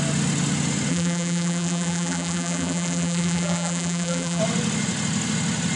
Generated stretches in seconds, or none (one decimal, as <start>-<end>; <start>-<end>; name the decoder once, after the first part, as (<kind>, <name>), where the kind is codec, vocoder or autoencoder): 0.9-4.4 (vocoder, BigVGAN v2)